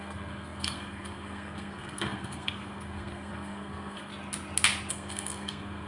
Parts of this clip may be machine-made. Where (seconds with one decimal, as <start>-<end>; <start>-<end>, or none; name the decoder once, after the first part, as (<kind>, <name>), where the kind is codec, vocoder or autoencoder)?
0.0-4.1 (codec, SNAC); 4.9-5.9